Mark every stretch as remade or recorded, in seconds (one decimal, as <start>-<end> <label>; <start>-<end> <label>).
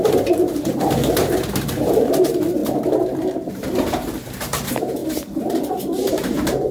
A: 0.0-2.6 remade; 2.6-3.5 recorded; 3.5-6.7 remade